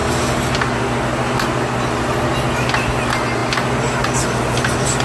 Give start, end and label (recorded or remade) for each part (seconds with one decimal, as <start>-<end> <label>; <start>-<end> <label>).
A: 0.0-5.0 recorded